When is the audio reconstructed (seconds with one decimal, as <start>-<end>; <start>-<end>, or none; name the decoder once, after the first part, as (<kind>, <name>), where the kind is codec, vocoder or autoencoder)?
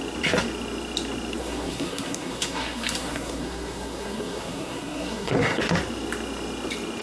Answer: 1.4-5.6 (codec, SNAC)